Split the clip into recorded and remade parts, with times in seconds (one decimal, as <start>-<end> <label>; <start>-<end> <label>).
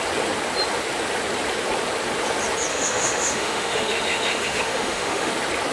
0.0-2.7 recorded; 2.7-5.3 remade; 5.3-5.7 recorded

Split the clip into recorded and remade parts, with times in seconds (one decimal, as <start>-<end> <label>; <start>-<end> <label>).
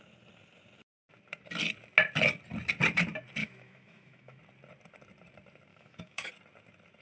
0.0-3.4 recorded; 3.4-4.4 remade; 4.4-5.7 recorded; 5.7-6.3 remade; 6.3-7.0 recorded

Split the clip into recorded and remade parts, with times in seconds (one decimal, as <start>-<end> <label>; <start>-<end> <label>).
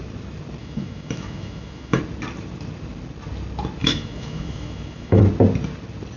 0.0-0.6 recorded; 0.6-2.0 remade; 2.0-3.8 recorded; 3.8-5.2 remade; 5.2-6.2 recorded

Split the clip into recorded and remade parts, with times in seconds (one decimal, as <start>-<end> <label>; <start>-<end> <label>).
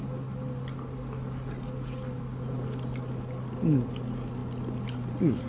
0.0-5.5 recorded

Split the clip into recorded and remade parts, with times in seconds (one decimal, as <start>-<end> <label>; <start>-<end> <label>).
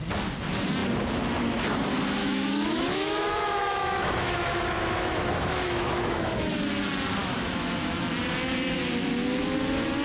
0.0-2.2 recorded; 2.2-6.5 remade; 6.5-7.2 recorded; 7.2-8.0 remade; 8.0-10.0 recorded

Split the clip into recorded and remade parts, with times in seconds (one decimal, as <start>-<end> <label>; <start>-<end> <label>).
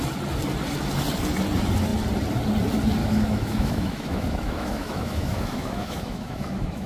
0.0-3.0 recorded; 3.0-6.9 remade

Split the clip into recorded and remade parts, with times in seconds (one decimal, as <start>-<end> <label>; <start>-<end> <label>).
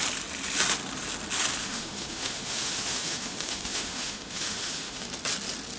0.0-1.6 recorded; 1.6-5.1 remade; 5.1-5.8 recorded